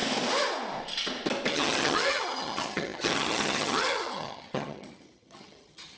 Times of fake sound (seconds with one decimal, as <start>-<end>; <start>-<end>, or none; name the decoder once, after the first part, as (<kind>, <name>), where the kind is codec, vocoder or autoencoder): 1.5-6.0 (vocoder, HiFi-GAN)